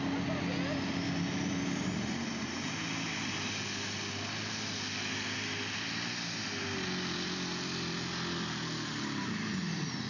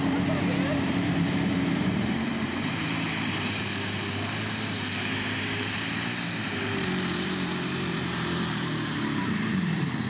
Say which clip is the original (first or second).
first